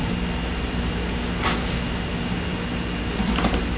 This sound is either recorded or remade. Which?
recorded